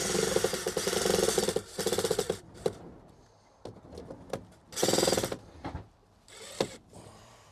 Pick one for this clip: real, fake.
real